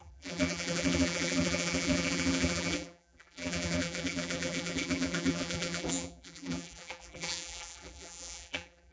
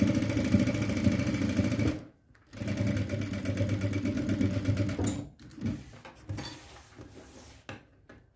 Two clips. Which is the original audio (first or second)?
second